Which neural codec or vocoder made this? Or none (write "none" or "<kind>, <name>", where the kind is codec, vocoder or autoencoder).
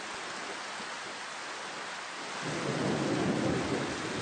none